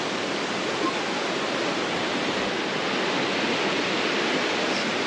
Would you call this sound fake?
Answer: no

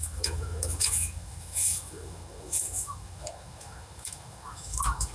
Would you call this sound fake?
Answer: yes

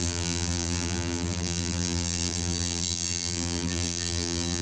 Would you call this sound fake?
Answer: yes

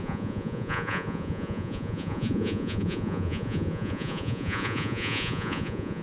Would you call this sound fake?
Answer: yes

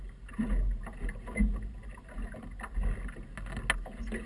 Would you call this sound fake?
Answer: no